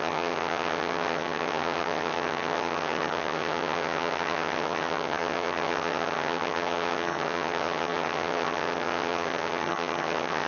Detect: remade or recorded remade